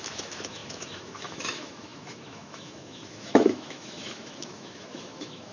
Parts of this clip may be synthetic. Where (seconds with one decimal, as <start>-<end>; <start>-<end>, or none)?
0.0-5.5